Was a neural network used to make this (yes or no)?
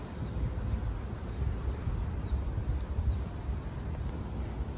no